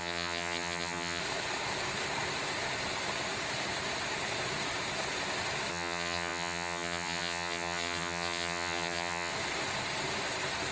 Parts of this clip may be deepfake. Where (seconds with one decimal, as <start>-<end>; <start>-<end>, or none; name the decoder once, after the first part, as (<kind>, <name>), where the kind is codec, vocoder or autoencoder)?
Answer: 0.0-1.2 (vocoder, HiFi-GAN); 5.7-9.3